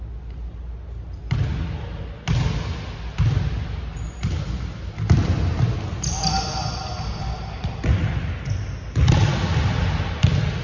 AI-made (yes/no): no